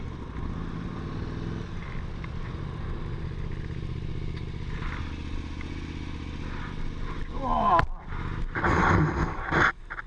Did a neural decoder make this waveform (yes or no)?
no